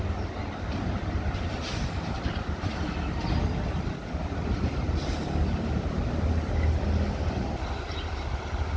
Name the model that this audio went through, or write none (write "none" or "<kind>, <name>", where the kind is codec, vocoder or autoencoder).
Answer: none